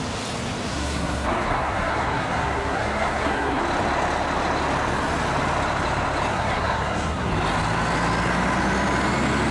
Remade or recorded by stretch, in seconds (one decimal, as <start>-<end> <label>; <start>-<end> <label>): 0.0-0.7 recorded; 0.7-3.6 remade; 3.6-6.3 recorded; 6.3-7.3 remade; 7.3-9.5 recorded